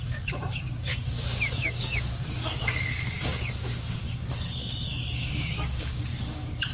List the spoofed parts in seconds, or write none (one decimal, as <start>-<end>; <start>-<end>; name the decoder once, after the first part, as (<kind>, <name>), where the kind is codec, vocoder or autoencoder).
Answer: 0.0-6.7 (codec, DAC)